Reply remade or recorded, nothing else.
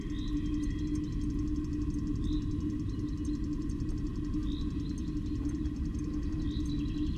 recorded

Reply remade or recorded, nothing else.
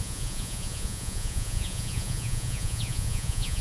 remade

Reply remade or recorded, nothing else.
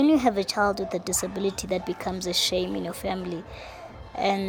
recorded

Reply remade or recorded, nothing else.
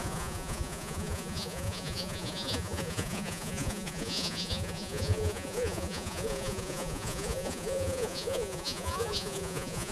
remade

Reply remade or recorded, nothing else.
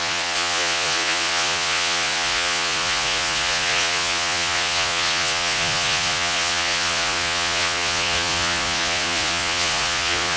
remade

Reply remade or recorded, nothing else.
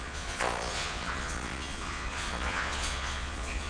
remade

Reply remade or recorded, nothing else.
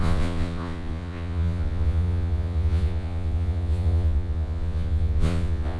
remade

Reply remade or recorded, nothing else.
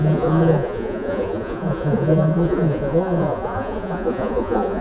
remade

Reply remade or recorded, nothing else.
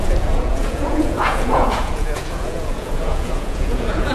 remade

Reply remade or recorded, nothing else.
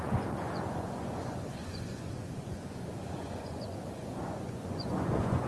remade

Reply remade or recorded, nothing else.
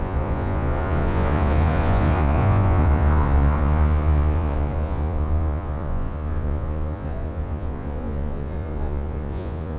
remade